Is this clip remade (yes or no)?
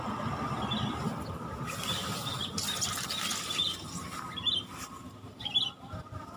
no